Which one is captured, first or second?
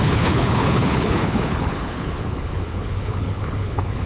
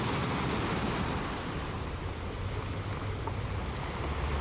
second